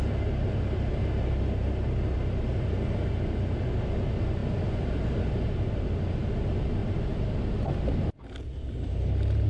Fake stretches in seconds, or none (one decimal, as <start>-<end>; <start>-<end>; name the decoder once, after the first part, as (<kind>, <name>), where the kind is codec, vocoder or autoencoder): 6.8-7.3 (vocoder, BigVGAN v2)